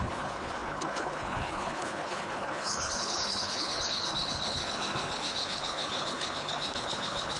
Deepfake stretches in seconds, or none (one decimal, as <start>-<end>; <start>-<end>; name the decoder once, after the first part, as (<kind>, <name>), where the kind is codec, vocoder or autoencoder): 0.0-7.4 (codec, HILCodec)